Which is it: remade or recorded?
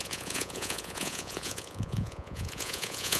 remade